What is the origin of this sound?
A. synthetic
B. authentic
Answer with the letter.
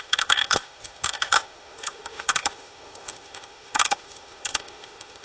A